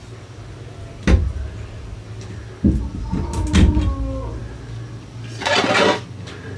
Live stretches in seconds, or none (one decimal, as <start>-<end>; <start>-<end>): 0.0-6.6